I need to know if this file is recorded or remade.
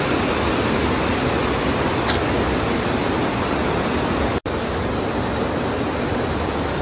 recorded